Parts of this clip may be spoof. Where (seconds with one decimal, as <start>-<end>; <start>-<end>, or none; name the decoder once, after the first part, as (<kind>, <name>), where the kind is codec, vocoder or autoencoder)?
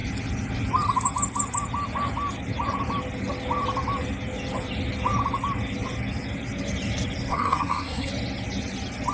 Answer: 7.3-8.1 (codec, SNAC)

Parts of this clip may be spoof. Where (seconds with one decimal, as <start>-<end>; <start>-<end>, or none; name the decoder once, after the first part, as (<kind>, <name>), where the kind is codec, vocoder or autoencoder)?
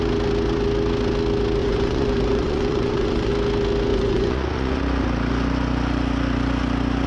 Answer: 1.6-3.3 (vocoder, Vocos); 3.9-4.8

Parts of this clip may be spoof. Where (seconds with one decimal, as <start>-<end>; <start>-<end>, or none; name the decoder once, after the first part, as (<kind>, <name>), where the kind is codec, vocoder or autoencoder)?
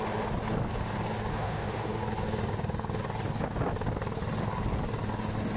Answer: 1.3-2.0 (autoencoder, DAC-VAE)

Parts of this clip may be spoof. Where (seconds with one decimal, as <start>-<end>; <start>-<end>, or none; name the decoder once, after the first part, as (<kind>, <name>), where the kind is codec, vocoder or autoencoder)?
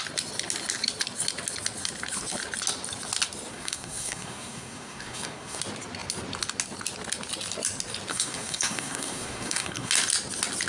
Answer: 3.5-5.6 (codec, SNAC); 8.1-9.9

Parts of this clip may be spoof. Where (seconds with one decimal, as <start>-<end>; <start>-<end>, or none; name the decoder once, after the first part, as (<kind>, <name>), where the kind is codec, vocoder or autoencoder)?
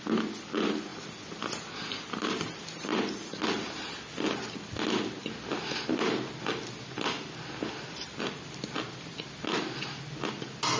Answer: none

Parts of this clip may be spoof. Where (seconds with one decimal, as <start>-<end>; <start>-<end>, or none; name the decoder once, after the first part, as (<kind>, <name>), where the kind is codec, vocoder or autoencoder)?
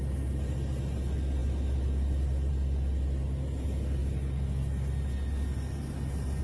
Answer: none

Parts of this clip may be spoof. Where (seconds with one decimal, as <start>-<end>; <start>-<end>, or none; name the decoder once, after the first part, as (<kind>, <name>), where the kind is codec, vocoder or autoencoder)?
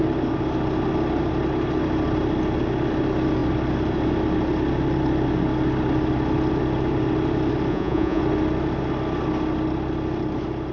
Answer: 7.7-8.2 (vocoder, Vocos)